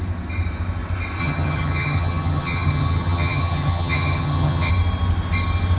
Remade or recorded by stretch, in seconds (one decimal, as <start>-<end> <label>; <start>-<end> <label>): 0.0-1.2 recorded; 1.2-4.7 remade; 4.7-5.8 recorded